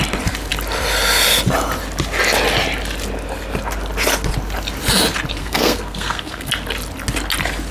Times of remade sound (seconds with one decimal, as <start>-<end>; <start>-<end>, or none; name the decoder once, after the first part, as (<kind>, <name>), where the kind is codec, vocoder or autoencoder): 5.4-6.5 (codec, SNAC)